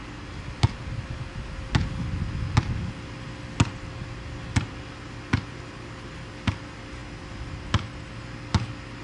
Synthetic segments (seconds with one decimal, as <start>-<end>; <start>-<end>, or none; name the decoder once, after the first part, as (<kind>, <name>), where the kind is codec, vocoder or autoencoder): none